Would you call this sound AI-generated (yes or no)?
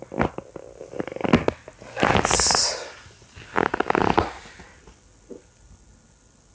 no